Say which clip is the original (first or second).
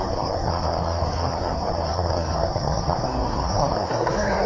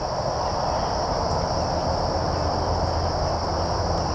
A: second